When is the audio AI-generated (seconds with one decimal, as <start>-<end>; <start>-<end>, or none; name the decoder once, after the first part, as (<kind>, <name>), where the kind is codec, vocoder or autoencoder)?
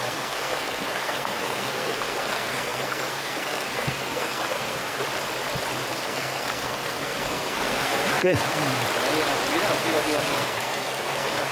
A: 0.0-5.0 (codec, SNAC); 5.9-8.7; 9.8-11.5